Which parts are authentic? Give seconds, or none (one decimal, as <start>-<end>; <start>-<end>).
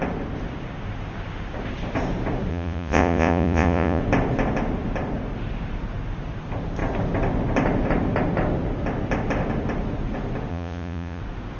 0.0-2.5; 4.0-10.5; 11.2-11.6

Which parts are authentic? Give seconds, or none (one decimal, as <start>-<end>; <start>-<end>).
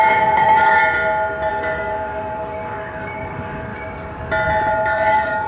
0.8-1.5; 3.7-4.7